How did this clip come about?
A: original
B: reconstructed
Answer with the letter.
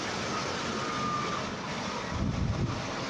A